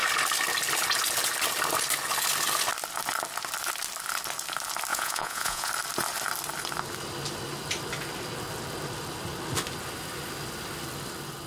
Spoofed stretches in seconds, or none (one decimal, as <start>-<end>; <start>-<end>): 4.9-5.7